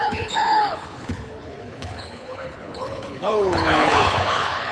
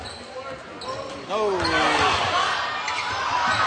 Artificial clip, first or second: first